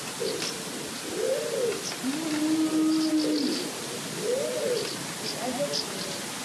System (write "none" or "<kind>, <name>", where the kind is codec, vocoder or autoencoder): none